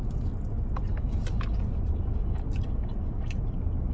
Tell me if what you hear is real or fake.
real